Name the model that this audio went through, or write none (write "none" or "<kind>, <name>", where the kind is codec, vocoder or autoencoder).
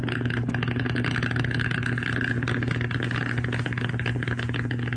none